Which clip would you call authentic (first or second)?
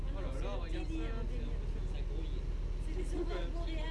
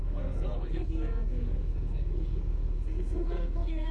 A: first